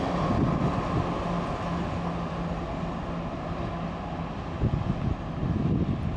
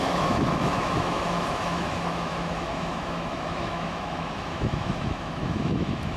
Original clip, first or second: first